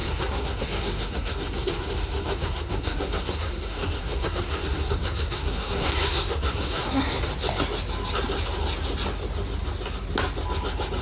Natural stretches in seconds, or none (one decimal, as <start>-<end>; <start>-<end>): 7.2-11.0